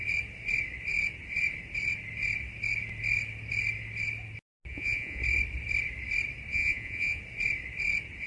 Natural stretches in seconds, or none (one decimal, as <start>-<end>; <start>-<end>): 0.0-4.7; 5.2-6.5; 7.2-8.3